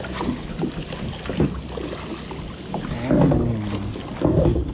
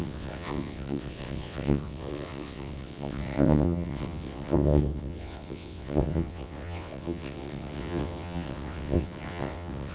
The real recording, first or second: first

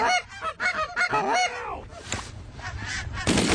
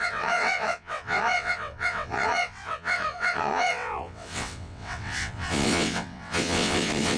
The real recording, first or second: first